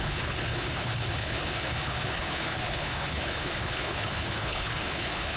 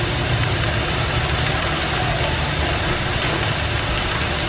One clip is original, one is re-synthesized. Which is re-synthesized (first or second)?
first